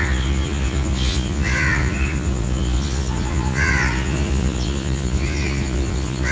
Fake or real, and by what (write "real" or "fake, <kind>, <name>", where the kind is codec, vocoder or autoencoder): fake, vocoder, Vocos